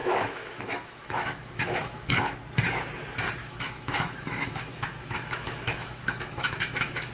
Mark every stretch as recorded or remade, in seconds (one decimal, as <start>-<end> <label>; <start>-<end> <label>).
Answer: 0.0-2.1 remade; 2.1-3.4 recorded; 3.4-7.1 remade

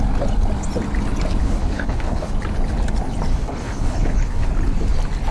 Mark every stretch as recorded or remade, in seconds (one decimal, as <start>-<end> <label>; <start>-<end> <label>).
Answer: 0.0-1.4 recorded; 1.4-2.3 remade; 2.3-3.3 recorded; 3.3-4.5 remade; 4.5-5.3 recorded

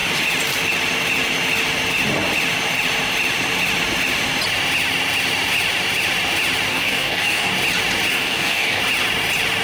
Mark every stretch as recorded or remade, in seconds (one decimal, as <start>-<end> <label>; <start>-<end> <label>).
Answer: 0.0-6.7 recorded; 6.7-7.5 remade; 7.5-8.1 recorded; 8.1-8.8 remade; 8.8-9.6 recorded

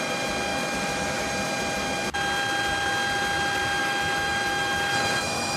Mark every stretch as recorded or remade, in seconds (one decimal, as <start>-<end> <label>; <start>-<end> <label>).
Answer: 0.0-0.5 recorded; 0.5-1.3 remade; 1.3-3.8 recorded; 3.8-5.6 remade

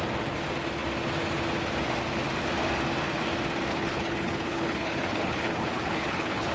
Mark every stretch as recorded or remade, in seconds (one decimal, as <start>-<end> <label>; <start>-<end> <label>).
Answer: 0.0-3.7 recorded; 3.7-6.5 remade

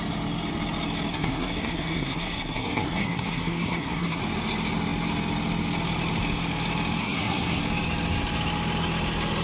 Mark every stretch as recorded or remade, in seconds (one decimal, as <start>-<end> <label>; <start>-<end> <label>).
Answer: 0.0-1.1 recorded; 1.1-4.2 remade; 4.2-7.0 recorded; 7.0-7.6 remade; 7.6-9.4 recorded

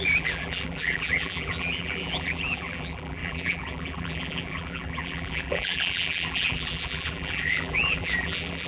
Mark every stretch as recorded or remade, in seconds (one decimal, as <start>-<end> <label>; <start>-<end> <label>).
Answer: 0.0-8.7 remade